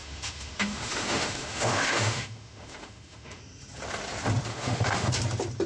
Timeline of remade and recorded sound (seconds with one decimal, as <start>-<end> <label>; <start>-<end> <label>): 0.0-3.4 remade; 3.4-4.5 recorded; 4.5-5.1 remade; 5.1-5.7 recorded